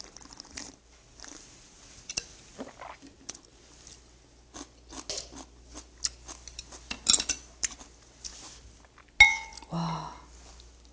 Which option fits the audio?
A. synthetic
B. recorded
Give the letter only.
B